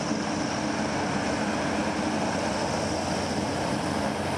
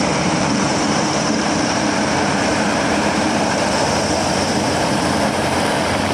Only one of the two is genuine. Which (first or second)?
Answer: first